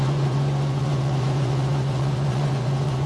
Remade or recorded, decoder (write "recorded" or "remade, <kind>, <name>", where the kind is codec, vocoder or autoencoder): remade, vocoder, Vocos